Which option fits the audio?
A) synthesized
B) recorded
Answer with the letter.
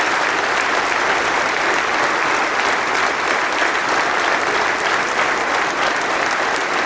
B